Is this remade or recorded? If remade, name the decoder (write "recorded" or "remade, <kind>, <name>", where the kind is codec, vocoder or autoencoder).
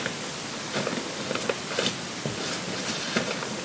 recorded